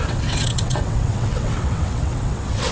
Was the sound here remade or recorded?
remade